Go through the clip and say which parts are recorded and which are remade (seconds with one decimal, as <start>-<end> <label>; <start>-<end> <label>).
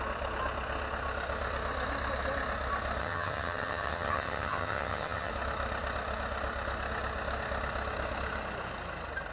0.0-3.0 recorded; 3.0-5.3 remade; 5.3-9.3 recorded